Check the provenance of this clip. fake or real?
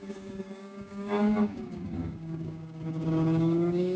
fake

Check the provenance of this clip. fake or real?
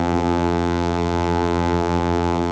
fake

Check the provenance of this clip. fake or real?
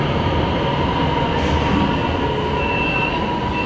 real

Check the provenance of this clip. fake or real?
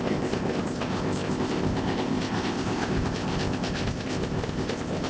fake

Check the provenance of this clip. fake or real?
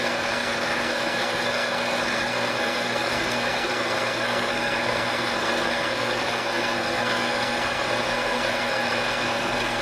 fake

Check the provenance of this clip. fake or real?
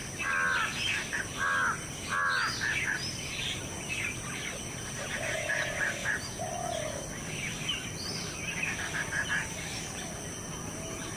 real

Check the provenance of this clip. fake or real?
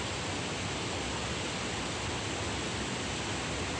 real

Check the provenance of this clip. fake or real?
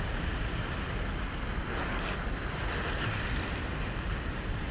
real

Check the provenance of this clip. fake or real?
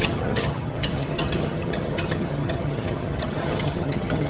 fake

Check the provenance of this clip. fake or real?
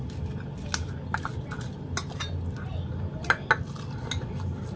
real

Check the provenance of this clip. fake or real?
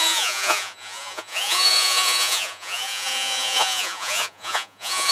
fake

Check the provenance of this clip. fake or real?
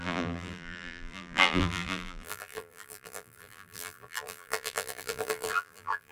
fake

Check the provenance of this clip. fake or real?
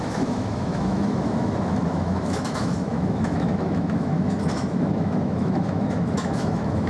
fake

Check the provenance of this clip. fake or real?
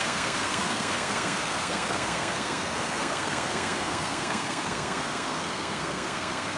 fake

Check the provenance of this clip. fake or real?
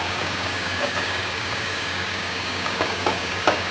fake